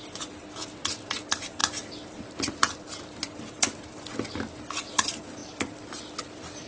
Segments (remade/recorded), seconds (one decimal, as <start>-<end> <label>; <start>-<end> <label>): 0.0-6.7 recorded